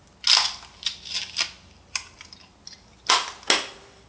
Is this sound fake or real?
real